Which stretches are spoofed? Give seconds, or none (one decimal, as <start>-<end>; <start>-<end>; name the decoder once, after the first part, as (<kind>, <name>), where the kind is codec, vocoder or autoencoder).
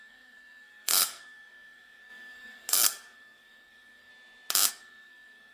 0.0-4.1 (codec, SNAC); 4.7-5.5